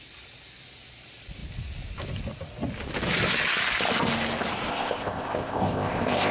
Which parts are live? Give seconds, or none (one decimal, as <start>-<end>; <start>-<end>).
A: 0.0-4.7